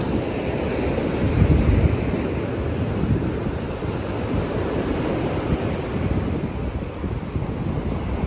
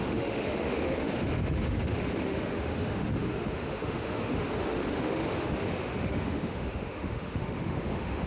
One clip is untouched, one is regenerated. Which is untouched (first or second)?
first